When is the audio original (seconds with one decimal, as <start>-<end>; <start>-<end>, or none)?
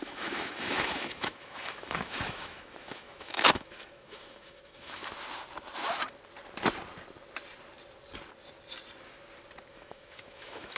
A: 5.0-9.7